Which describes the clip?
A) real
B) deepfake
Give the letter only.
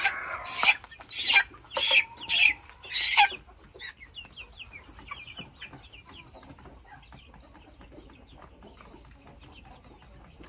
A